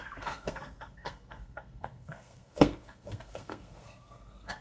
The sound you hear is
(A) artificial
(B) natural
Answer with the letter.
A